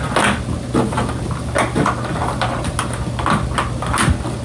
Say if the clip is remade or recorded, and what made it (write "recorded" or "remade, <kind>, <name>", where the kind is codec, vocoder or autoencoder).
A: recorded